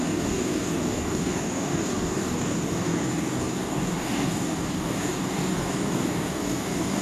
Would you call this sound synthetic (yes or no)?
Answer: yes